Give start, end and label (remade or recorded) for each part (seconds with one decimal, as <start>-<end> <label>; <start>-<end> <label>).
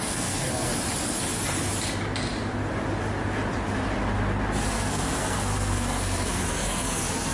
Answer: 0.0-0.7 remade; 0.7-4.6 recorded; 4.6-7.3 remade